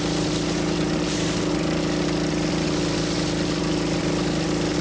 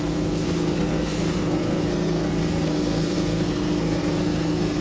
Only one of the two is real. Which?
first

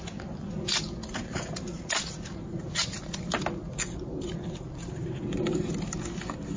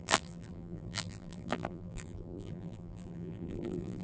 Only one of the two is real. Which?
first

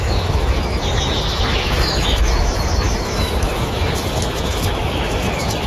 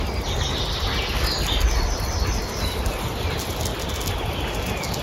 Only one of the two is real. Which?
second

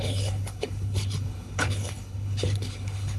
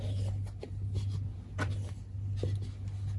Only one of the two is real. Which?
second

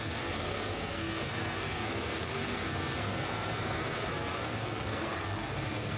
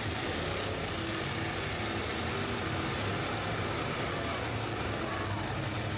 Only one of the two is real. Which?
second